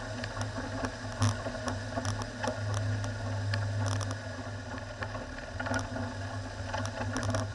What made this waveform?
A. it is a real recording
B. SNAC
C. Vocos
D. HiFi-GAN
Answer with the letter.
A